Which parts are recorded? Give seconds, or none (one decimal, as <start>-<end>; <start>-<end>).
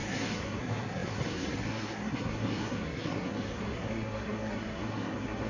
none